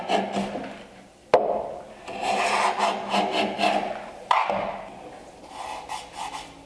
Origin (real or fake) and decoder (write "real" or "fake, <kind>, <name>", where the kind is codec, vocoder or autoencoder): real